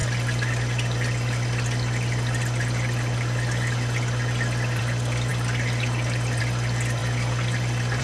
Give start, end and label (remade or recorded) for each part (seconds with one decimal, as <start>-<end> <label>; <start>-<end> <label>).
0.0-8.0 recorded